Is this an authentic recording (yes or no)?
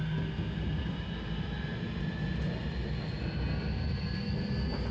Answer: yes